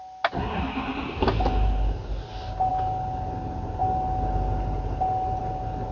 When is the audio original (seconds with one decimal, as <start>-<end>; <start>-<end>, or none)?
0.0-5.9